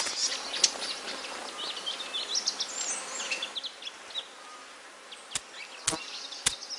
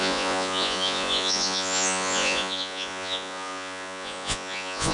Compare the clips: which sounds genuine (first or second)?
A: first